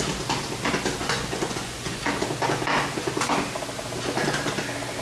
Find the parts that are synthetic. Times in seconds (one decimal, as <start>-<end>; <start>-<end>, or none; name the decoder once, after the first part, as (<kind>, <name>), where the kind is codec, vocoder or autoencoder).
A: 1.0-2.0 (vocoder, Vocos)